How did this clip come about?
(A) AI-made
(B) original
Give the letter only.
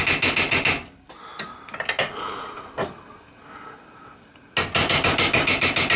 B